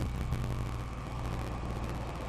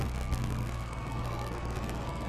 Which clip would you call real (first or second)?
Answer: first